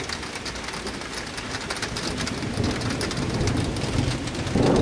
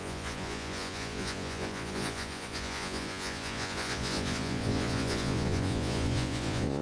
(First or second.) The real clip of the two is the first